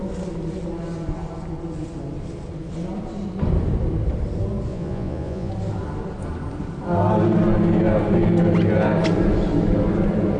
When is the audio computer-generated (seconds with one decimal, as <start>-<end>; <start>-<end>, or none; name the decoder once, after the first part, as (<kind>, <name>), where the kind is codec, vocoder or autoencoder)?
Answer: 4.7-5.5 (vocoder, Vocos)